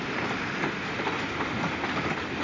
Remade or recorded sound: recorded